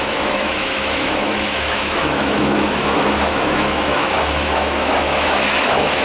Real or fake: fake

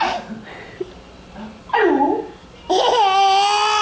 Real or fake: real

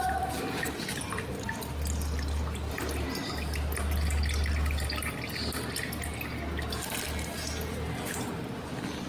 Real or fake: real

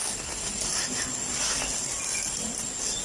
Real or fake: real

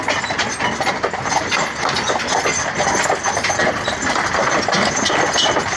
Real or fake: real